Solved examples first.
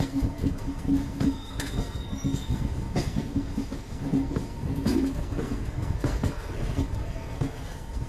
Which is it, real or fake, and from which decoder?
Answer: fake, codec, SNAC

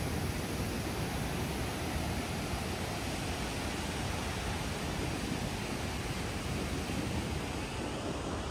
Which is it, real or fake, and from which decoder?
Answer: real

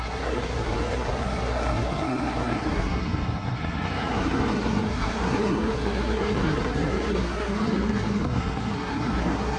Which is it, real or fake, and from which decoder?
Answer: fake, codec, SNAC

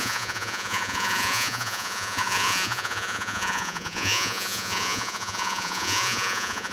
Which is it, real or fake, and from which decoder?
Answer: fake, vocoder, Vocos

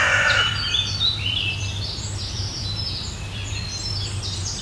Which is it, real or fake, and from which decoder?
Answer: real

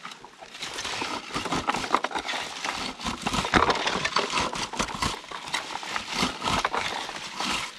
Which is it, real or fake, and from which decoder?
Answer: real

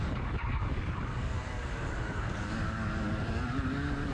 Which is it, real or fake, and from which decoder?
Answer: fake, codec, DAC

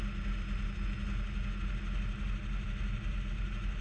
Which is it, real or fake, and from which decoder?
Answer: real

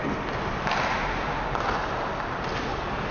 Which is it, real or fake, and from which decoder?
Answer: real